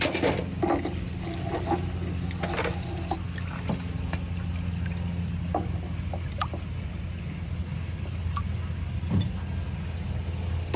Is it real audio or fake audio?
real